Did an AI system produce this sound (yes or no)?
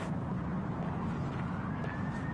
no